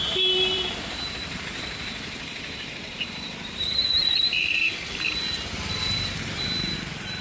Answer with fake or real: fake